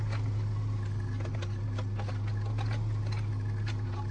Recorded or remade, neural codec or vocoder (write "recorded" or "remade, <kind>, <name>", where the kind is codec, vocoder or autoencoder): recorded